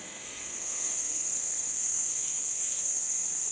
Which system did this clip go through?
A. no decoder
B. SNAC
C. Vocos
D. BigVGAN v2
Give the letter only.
B